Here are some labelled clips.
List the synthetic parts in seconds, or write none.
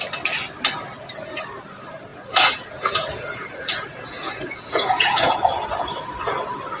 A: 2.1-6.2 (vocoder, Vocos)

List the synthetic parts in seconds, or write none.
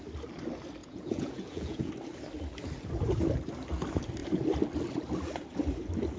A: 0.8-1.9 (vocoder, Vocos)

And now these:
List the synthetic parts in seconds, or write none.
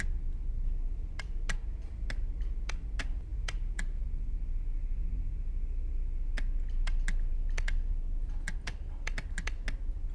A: 3.3-4.0 (vocoder, Vocos)